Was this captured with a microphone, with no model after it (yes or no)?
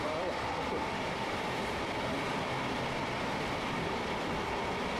no